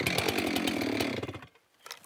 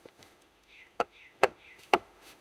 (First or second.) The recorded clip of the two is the first